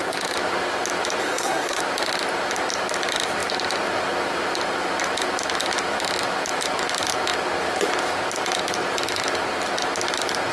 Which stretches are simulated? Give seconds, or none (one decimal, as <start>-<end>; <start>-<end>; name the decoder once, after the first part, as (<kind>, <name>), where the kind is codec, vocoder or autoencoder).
1.2-1.8 (codec, SNAC)